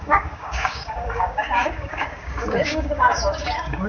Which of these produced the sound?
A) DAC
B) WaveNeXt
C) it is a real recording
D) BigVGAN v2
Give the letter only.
A